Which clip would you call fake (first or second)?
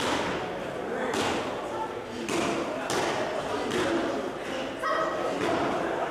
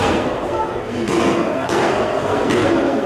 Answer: second